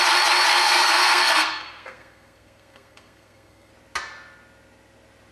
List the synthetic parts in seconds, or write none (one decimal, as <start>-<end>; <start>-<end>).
0.5-3.7